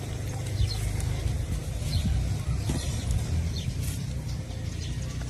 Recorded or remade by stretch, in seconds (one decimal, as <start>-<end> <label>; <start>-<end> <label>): 0.0-1.6 recorded; 1.6-4.5 remade; 4.5-5.3 recorded